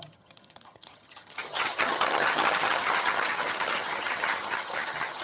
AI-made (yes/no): yes